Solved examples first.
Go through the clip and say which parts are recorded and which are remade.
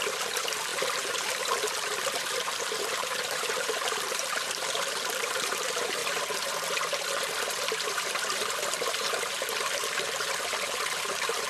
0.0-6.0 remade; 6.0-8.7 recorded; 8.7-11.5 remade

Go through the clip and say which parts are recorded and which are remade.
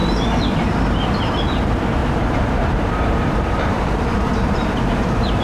0.0-2.0 recorded; 2.0-5.4 remade